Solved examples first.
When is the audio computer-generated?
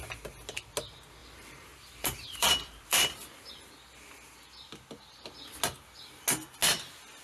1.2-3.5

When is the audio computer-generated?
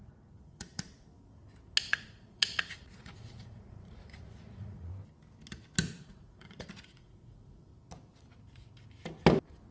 0.0-1.1; 1.9-4.9; 6.0-7.7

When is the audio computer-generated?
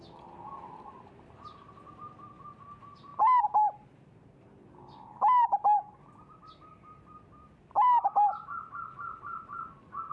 0.0-3.1; 6.0-8.5